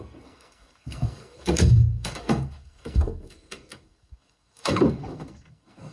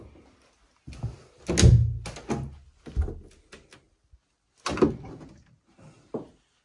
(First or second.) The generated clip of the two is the first